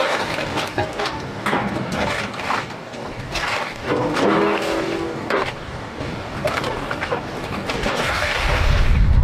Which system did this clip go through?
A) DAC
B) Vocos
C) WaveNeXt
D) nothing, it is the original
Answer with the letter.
A